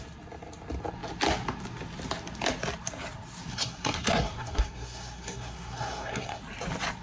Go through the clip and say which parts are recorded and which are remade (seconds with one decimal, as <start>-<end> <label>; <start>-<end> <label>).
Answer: 0.0-3.5 recorded; 3.5-6.4 remade; 6.4-7.0 recorded